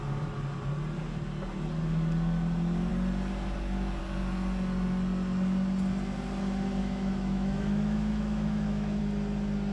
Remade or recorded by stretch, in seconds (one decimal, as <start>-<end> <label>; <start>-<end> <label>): 0.0-6.8 recorded; 6.8-9.0 remade; 9.0-9.7 recorded